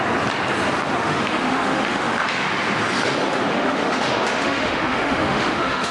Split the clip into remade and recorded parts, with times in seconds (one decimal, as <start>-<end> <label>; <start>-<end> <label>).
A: 0.0-1.0 recorded; 1.0-2.5 remade; 2.5-3.5 recorded; 3.5-5.9 remade